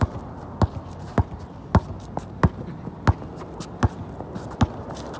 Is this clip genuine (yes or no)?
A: yes